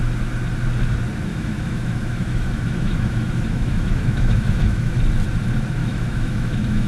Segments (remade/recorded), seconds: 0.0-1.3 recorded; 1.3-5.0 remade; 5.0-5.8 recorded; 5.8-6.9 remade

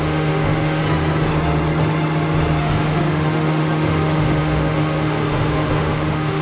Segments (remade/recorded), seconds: 0.0-0.8 remade; 0.8-2.6 recorded; 2.6-6.4 remade

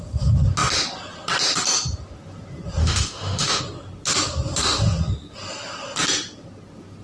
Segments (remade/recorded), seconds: 0.0-2.8 recorded; 2.8-3.6 remade; 3.6-7.0 recorded

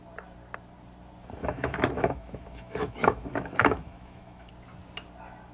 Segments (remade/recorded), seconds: 0.0-1.4 recorded; 1.4-4.5 remade; 4.5-5.5 recorded